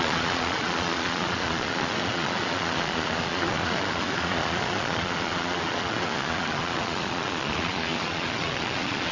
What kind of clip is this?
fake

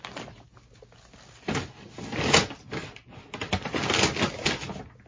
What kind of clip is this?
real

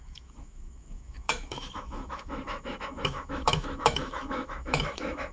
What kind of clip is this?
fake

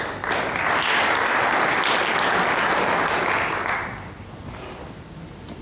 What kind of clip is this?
real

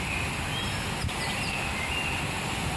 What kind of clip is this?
real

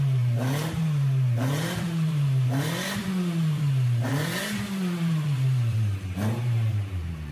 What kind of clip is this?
fake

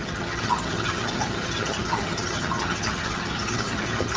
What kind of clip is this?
fake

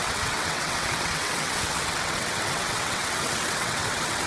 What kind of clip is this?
fake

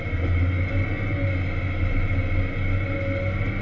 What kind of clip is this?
real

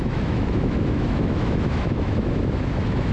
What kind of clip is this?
fake